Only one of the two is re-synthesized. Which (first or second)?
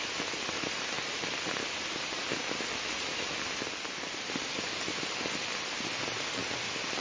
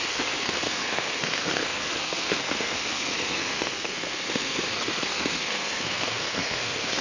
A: second